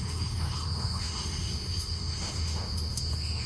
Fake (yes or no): yes